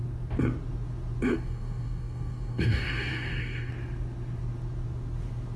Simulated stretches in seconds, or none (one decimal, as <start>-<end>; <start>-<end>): 1.3-3.7